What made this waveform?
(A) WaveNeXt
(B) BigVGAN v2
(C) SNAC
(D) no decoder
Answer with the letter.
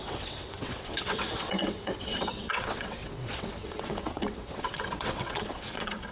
A